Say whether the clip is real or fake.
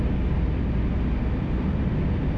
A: real